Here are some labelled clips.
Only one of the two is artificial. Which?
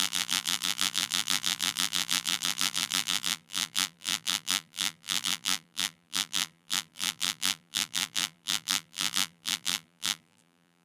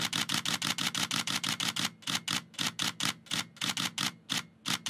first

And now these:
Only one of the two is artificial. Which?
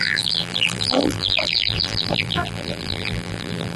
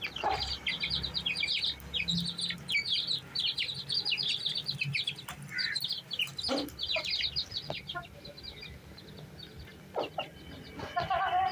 first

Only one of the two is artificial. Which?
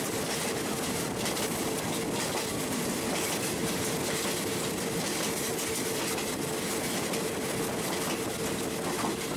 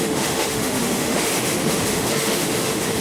second